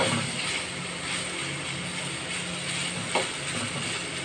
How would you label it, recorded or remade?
recorded